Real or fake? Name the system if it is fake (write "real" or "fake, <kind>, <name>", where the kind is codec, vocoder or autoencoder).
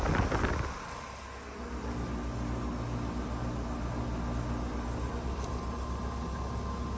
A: real